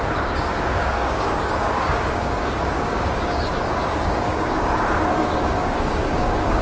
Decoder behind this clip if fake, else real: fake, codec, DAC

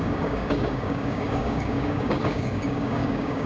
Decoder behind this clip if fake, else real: fake, codec, DAC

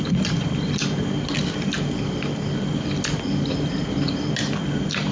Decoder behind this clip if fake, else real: real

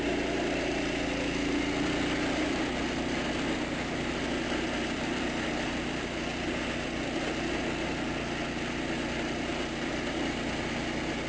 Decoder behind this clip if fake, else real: real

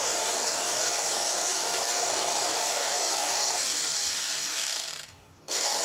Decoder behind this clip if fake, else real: fake, codec, DAC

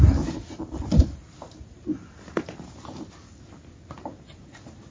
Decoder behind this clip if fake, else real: real